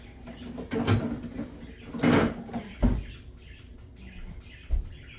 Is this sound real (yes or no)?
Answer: yes